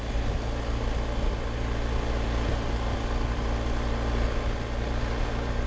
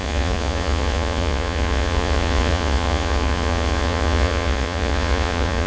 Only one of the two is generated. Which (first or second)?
second